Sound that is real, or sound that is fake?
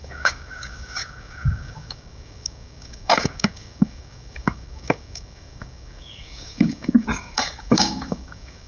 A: fake